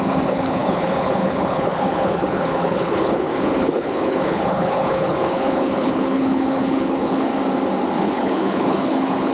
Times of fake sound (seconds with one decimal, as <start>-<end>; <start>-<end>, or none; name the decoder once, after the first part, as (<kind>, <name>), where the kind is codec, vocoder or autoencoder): 0.0-7.3 (codec, HILCodec); 8.0-9.3